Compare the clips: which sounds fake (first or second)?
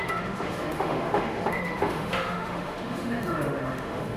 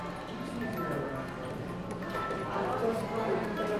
first